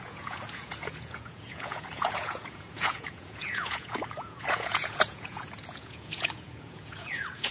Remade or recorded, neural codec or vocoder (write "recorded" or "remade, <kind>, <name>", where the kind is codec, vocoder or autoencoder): remade, vocoder, Vocos